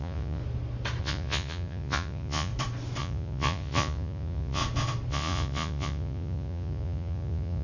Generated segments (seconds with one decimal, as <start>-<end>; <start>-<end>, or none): 0.0-0.4; 1.0-2.5; 3.0-4.6; 5.1-7.6